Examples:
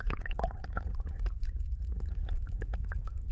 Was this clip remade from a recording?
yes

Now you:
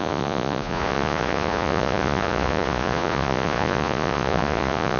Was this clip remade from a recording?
yes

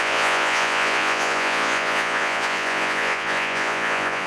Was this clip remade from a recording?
yes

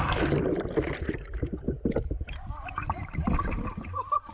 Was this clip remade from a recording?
no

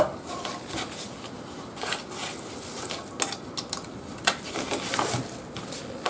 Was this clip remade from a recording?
no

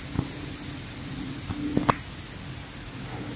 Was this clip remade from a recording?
no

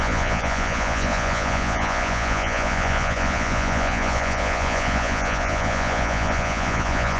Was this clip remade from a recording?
yes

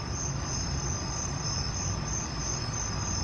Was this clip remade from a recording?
no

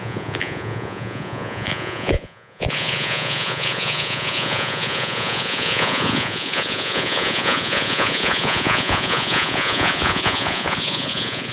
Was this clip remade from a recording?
yes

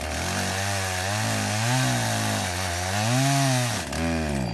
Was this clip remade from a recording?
no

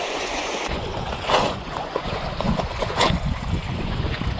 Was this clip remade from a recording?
yes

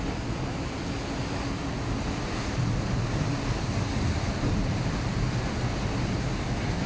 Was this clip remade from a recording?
no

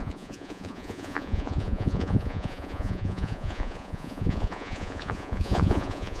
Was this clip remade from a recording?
yes